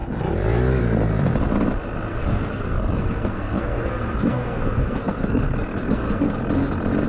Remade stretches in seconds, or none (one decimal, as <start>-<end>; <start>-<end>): 2.1-6.4